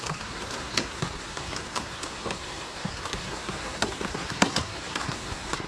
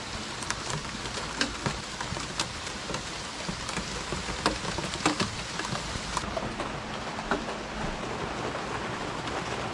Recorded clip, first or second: second